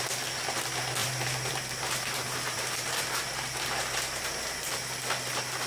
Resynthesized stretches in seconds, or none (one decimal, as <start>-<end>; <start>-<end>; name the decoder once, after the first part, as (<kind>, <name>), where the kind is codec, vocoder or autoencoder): 1.0-4.2 (vocoder, BigVGAN v2)